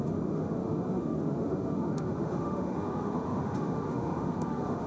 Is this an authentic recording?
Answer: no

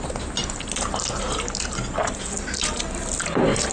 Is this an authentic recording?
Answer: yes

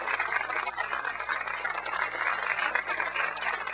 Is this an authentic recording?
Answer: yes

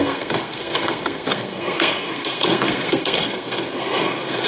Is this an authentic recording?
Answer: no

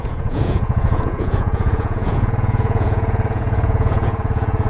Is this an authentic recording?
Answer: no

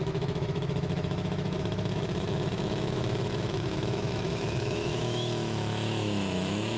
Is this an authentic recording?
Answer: no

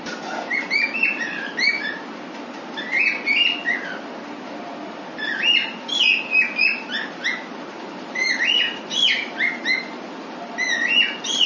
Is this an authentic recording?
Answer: yes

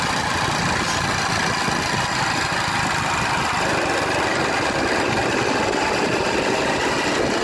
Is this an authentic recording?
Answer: yes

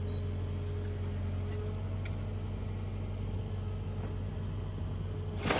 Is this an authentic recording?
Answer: yes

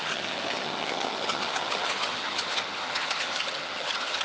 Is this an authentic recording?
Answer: no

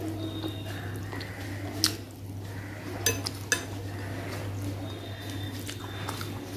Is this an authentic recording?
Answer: yes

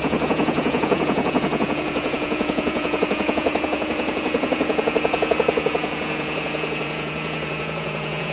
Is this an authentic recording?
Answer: no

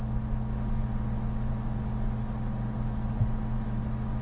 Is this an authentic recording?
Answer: yes